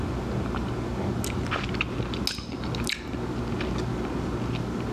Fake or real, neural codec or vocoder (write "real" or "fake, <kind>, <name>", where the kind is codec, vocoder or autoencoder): real